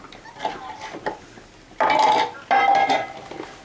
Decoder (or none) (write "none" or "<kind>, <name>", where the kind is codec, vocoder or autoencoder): none